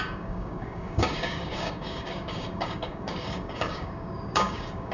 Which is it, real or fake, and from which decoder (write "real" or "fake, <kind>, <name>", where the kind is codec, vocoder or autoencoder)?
fake, codec, DAC